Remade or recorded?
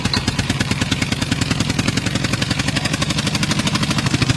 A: recorded